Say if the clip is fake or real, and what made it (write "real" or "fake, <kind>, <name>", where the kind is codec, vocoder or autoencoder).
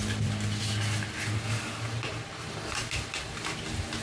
real